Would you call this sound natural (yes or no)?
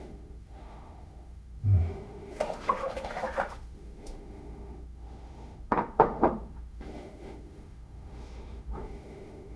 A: no